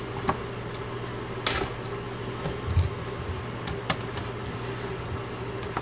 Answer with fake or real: real